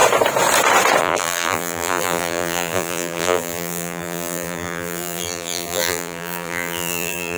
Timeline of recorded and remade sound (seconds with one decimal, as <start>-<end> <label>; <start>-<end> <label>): 0.0-1.0 recorded; 1.0-7.4 remade